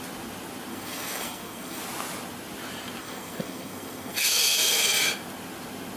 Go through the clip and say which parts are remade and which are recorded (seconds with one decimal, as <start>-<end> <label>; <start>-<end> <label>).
0.0-0.7 recorded; 0.7-1.8 remade; 1.8-3.0 recorded; 3.0-5.0 remade; 5.0-6.0 recorded